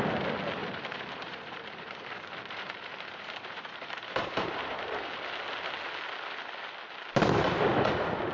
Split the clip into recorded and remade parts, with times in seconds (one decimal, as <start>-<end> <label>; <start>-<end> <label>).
0.0-0.6 recorded; 0.6-5.0 remade; 5.0-8.3 recorded